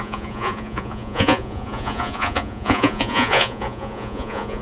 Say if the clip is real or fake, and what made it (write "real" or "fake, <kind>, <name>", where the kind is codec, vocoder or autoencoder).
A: fake, vocoder, Vocos